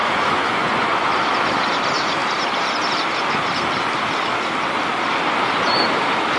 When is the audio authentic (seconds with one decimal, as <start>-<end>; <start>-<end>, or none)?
1.1-6.4